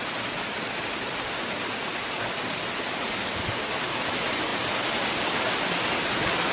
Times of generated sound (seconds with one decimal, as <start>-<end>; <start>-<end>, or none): none